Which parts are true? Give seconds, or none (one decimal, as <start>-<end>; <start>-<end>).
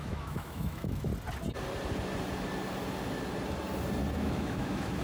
1.1-4.1